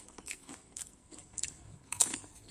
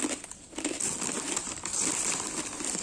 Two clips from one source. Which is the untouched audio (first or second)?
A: second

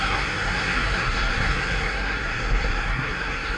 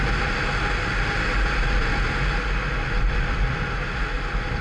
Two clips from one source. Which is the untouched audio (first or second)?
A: second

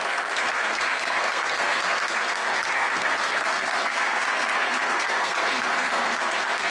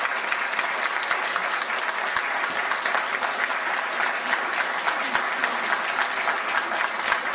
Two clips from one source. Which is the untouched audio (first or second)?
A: second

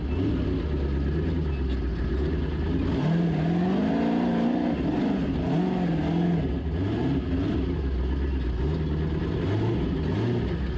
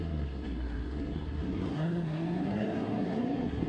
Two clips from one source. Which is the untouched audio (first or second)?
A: first